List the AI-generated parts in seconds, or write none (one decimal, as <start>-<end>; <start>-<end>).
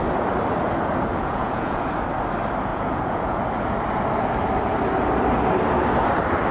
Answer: 1.1-1.9; 2.7-3.5